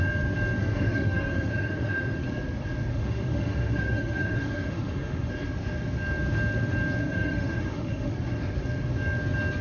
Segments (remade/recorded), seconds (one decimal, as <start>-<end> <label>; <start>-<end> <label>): 0.0-0.6 recorded; 0.6-2.2 remade; 2.2-2.9 recorded; 2.9-5.3 remade; 5.3-7.0 recorded; 7.0-8.1 remade; 8.1-9.6 recorded

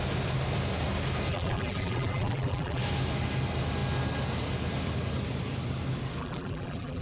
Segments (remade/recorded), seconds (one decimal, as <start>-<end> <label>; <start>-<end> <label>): 0.0-1.3 recorded; 1.3-2.8 remade; 2.8-6.2 recorded; 6.2-7.0 remade

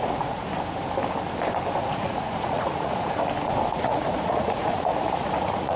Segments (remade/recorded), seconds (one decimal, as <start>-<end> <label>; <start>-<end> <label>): 0.0-0.5 remade; 0.5-1.8 recorded; 1.8-3.2 remade; 3.2-3.7 recorded; 3.7-5.8 remade

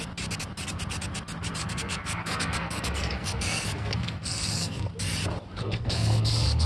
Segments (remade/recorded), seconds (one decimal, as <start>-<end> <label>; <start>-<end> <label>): 0.0-1.6 recorded; 1.6-4.9 remade; 4.9-5.6 recorded; 5.6-6.7 remade

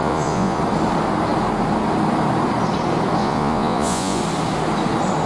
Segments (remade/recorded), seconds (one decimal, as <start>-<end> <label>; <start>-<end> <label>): 0.0-0.6 remade; 0.6-3.2 recorded; 3.2-4.2 remade; 4.2-5.3 recorded

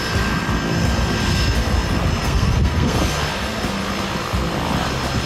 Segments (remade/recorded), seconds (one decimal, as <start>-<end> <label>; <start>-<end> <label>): 0.0-2.2 recorded; 2.2-3.0 remade; 3.0-5.3 recorded

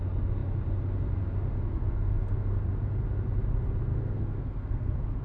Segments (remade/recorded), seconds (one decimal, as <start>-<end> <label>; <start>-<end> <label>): 0.0-1.7 recorded; 1.7-2.6 remade; 2.6-3.9 recorded; 3.9-5.2 remade

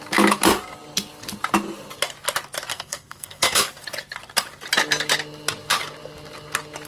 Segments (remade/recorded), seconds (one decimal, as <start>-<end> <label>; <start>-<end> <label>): 0.0-2.7 recorded; 2.7-3.7 remade; 3.7-6.9 recorded